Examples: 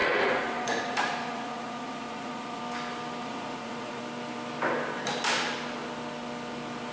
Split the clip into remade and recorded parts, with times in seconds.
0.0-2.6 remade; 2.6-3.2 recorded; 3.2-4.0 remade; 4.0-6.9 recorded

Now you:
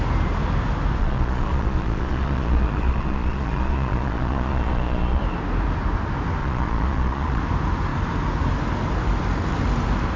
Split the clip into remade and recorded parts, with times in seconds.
0.0-1.0 recorded; 1.0-5.2 remade; 5.2-6.4 recorded; 6.4-7.4 remade; 7.4-10.2 recorded

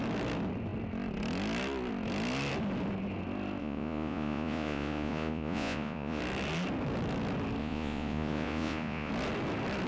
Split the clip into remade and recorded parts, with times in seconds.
0.0-3.6 recorded; 3.6-6.2 remade; 6.2-7.6 recorded; 7.6-9.1 remade; 9.1-9.9 recorded

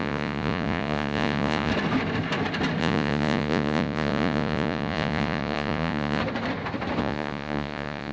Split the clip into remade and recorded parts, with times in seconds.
0.0-1.7 remade; 1.7-2.8 recorded; 2.8-6.2 remade; 6.2-7.0 recorded; 7.0-8.1 remade

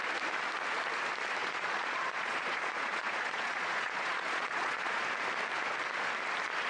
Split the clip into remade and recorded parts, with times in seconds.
0.0-1.4 recorded; 1.4-5.0 remade; 5.0-6.7 recorded